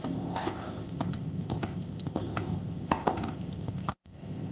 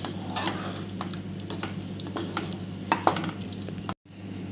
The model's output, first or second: first